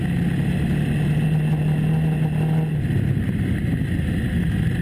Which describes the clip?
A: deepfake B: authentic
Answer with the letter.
B